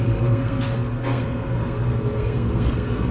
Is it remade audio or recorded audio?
remade